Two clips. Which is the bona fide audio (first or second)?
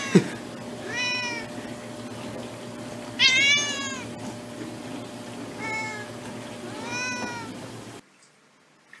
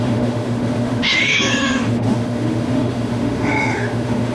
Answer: first